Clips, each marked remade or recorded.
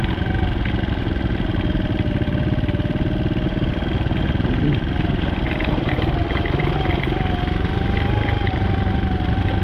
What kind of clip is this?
recorded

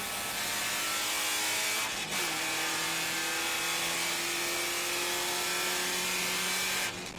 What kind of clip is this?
recorded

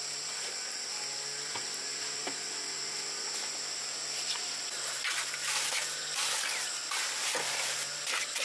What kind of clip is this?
recorded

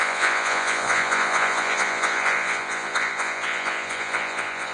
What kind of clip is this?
remade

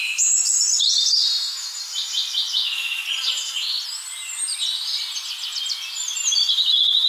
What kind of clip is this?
recorded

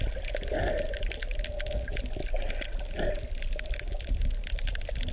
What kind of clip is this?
recorded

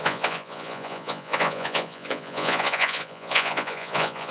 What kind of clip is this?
remade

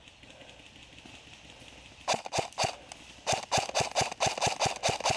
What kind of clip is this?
recorded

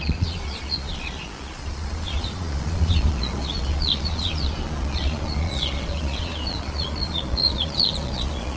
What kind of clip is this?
remade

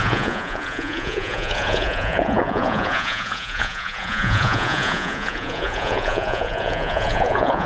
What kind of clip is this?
remade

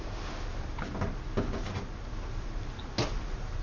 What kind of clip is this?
recorded